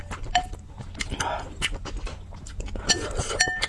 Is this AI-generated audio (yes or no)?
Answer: no